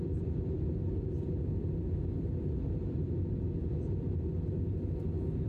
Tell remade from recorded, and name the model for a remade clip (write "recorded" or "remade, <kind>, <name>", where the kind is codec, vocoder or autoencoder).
recorded